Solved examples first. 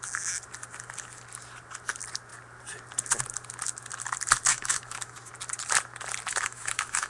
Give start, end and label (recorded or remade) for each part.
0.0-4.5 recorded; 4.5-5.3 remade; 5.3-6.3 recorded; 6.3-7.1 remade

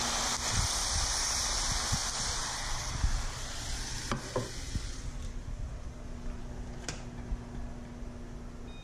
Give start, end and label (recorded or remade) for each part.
0.0-8.8 recorded

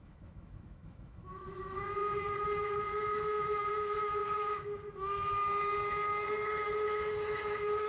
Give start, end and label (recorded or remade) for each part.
0.0-7.9 remade

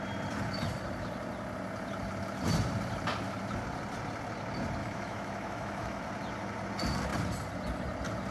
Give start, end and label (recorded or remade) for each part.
0.0-4.8 recorded; 4.8-6.0 remade; 6.0-8.3 recorded

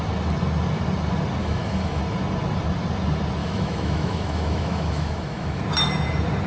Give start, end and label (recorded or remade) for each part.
0.0-1.4 recorded; 1.4-2.0 remade; 2.0-3.4 recorded; 3.4-5.6 remade; 5.6-6.5 recorded